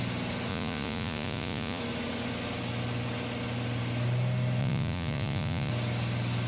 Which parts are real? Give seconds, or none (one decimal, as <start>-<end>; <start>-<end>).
0.0-0.5; 1.8-4.6; 5.7-6.5